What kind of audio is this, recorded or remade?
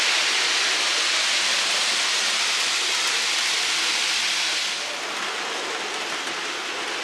recorded